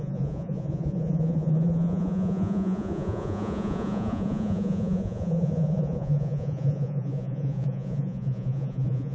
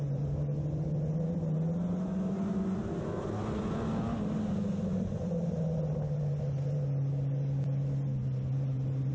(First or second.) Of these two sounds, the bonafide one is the second